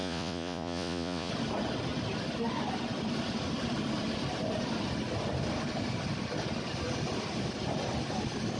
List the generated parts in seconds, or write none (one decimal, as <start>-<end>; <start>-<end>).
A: 0.0-1.3